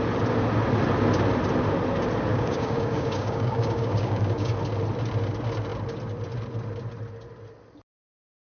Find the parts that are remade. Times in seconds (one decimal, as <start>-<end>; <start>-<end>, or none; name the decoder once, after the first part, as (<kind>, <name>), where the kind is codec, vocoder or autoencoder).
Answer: 2.3-4.5 (codec, DAC)